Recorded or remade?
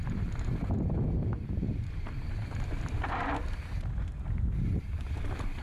remade